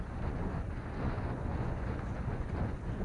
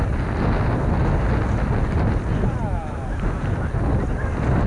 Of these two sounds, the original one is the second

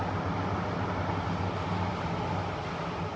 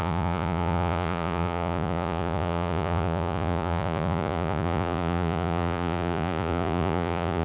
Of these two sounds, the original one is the first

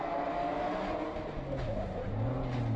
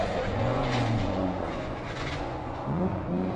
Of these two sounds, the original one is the first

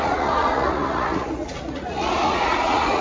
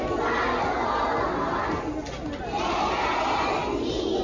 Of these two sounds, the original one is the second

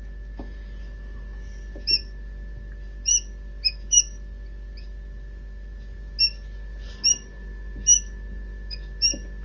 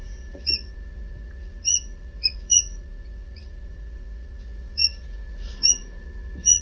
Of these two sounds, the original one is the first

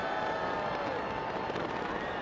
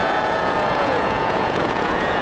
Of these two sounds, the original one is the first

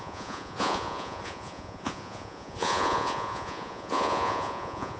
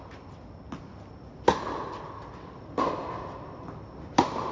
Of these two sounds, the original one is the second